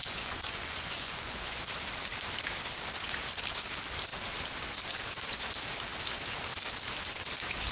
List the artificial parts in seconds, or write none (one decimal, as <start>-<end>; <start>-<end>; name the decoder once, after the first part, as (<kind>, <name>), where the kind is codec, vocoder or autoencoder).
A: 0.0-1.6 (vocoder, Vocos)